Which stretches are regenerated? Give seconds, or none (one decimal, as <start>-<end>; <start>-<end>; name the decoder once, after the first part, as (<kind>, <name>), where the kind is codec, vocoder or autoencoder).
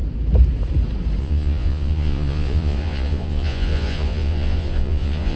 1.2-5.4 (vocoder, Vocos)